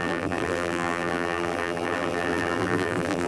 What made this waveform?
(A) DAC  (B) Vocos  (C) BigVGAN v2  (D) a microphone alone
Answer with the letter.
C